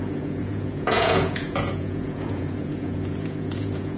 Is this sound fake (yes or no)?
yes